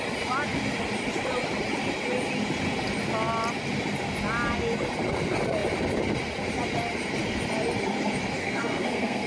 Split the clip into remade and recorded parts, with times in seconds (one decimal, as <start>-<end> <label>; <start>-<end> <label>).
0.0-8.4 recorded; 8.4-9.3 remade

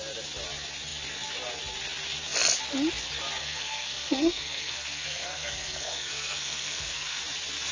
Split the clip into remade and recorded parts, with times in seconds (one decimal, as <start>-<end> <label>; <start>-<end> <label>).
0.0-3.4 recorded; 3.4-7.2 remade; 7.2-7.7 recorded

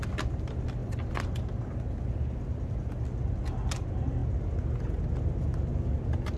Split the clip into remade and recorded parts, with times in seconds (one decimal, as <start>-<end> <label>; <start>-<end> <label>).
0.0-6.4 recorded

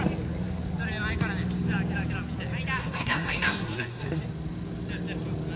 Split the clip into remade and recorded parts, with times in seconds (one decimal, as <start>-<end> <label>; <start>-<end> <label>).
0.0-2.8 recorded; 2.8-4.2 remade; 4.2-5.6 recorded

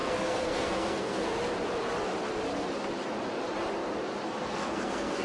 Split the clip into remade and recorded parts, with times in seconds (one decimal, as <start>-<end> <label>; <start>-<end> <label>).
0.0-1.3 remade; 1.3-4.4 recorded; 4.4-5.2 remade

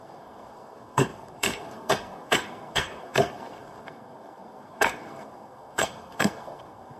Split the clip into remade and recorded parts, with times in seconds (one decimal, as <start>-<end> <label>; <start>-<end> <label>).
0.0-7.0 remade

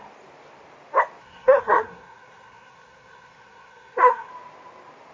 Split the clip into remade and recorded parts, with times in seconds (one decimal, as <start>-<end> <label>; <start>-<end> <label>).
0.0-1.2 recorded; 1.2-4.3 remade; 4.3-5.1 recorded

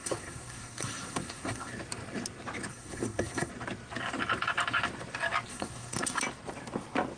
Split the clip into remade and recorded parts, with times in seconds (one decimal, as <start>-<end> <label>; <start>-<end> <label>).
0.0-1.7 remade; 1.7-2.7 recorded; 2.7-3.5 remade; 3.5-5.5 recorded; 5.5-6.2 remade; 6.2-7.2 recorded